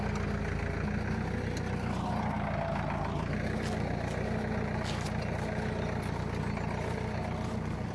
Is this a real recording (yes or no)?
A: yes